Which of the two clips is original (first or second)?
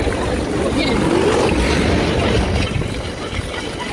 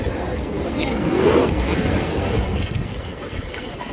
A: first